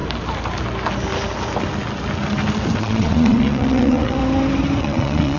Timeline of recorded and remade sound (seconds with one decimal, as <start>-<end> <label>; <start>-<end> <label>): 0.0-2.8 recorded; 2.8-4.2 remade; 4.2-4.8 recorded; 4.8-5.4 remade